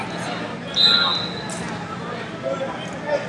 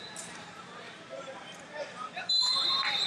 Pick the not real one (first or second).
second